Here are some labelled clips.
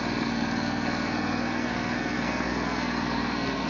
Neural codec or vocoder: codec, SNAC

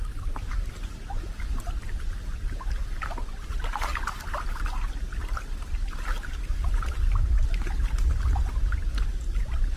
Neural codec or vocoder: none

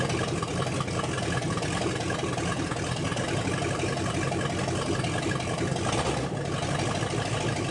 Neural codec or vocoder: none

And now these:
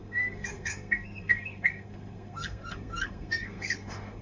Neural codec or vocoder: codec, SNAC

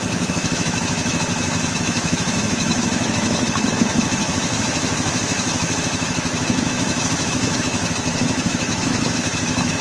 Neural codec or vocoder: autoencoder, DAC-VAE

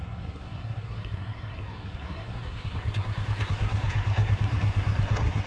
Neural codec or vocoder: codec, SNAC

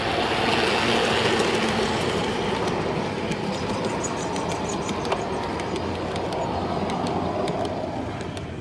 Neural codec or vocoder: none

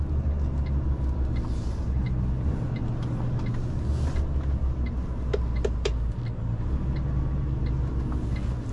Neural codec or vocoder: none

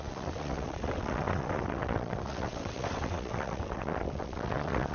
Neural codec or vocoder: vocoder, WaveNeXt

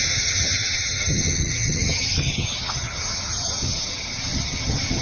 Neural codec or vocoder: vocoder, HiFi-GAN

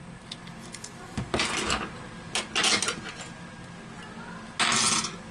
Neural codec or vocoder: none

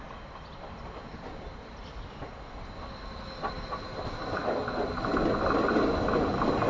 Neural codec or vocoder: none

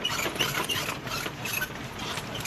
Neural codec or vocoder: vocoder, BigVGAN v2